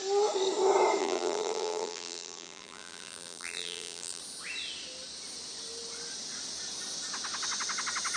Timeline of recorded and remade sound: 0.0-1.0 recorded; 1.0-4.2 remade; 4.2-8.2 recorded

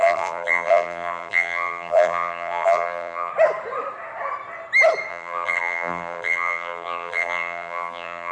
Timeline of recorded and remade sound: 0.0-3.3 remade; 3.3-5.1 recorded; 5.1-8.3 remade